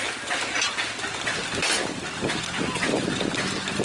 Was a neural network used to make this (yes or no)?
no